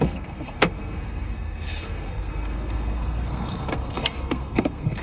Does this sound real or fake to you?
fake